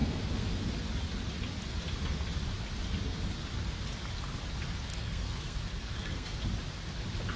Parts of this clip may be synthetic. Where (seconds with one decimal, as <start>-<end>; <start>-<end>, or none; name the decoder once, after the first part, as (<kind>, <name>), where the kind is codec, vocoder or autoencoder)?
0.0-0.6 (codec, SNAC); 4.9-6.4